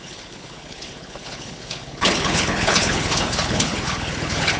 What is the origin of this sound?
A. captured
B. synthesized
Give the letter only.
B